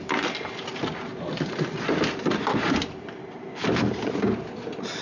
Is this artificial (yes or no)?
no